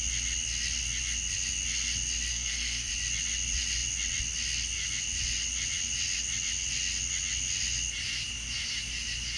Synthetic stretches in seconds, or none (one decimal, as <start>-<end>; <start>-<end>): 2.3-2.9